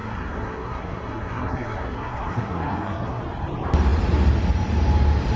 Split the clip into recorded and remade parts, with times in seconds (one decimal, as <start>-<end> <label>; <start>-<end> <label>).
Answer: 0.0-3.2 remade; 3.2-5.4 recorded